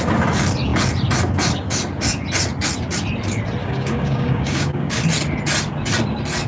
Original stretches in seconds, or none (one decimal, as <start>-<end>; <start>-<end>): 0.0-3.6; 5.0-6.5